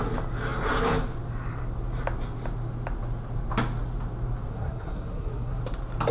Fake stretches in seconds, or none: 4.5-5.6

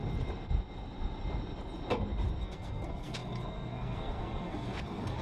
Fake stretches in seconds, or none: 2.4-5.2

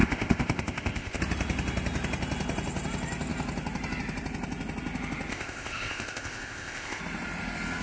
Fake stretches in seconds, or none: 0.0-1.2; 5.3-7.0